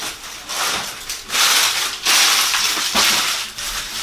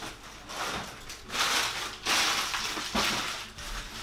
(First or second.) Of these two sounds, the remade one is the first